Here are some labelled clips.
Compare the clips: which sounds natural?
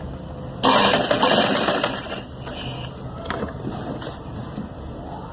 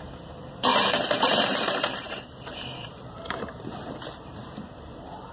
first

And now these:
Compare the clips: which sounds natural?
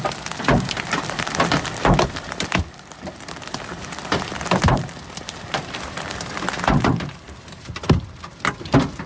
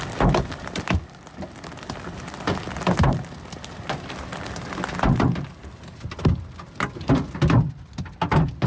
second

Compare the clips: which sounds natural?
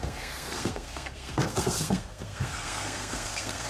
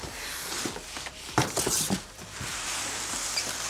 second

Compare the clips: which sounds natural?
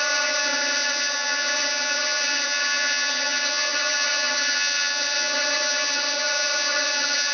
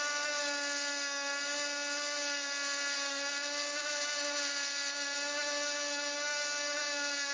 second